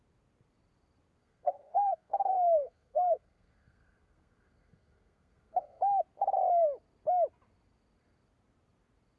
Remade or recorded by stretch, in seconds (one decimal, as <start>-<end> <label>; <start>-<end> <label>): 0.0-1.2 recorded; 1.2-5.8 remade; 5.8-9.2 recorded